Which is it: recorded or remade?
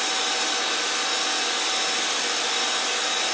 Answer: recorded